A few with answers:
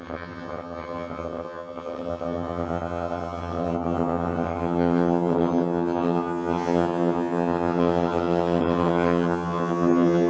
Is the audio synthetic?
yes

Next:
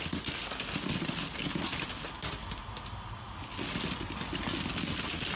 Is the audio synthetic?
no